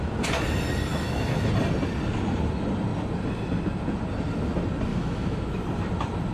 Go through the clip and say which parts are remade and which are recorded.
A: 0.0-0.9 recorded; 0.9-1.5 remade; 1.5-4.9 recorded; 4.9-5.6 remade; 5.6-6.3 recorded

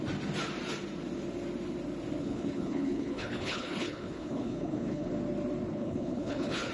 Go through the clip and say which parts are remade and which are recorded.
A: 0.0-2.2 recorded; 2.2-5.1 remade; 5.1-5.7 recorded; 5.7-6.7 remade

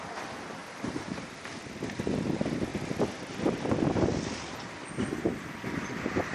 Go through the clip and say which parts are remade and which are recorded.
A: 0.0-0.6 recorded; 0.6-1.2 remade; 1.2-6.3 recorded

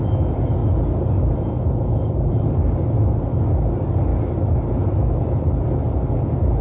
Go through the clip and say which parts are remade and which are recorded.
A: 0.0-6.6 recorded

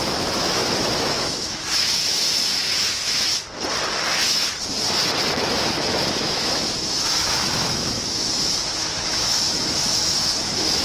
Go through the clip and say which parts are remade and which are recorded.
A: 0.0-3.3 remade; 3.3-5.3 recorded; 5.3-10.8 remade